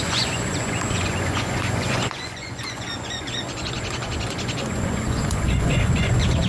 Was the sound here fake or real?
fake